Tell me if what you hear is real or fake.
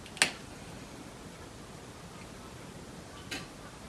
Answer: real